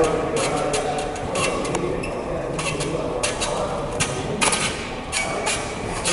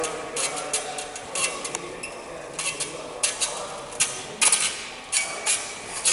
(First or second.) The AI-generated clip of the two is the first